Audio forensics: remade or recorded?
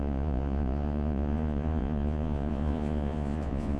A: remade